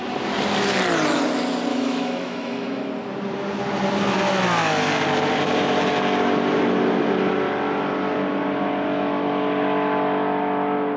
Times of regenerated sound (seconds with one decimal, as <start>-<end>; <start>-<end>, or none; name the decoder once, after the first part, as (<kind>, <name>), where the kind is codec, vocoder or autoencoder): 1.7-2.9 (autoencoder, DAC-VAE)